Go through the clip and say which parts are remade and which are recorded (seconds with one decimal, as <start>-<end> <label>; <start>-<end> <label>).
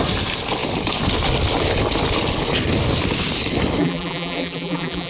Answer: 0.0-3.8 recorded; 3.8-5.1 remade